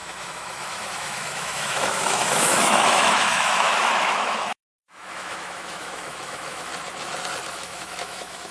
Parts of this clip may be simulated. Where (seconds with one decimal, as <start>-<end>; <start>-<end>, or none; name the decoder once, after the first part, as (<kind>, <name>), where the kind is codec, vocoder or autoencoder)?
0.0-6.7 (autoencoder, DAC-VAE); 7.5-8.5